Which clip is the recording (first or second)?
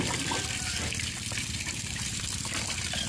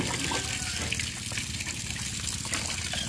second